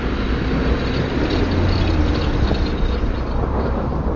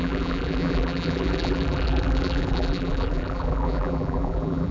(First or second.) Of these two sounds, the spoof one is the second